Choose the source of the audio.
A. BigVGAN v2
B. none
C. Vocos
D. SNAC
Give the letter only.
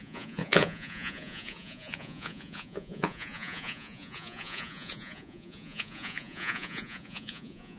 C